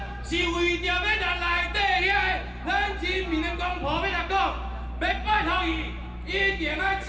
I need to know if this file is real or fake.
real